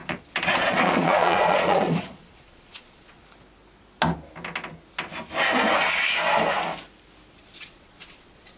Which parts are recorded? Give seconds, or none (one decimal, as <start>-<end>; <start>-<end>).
3.2-7.3